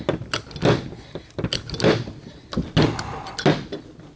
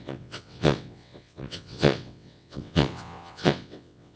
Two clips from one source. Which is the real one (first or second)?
first